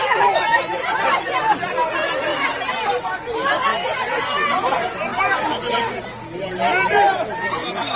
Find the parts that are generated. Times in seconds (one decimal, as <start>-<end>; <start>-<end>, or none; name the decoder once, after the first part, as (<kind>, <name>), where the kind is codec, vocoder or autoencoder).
none